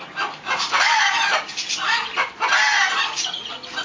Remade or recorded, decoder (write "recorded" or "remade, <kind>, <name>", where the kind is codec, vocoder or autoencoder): recorded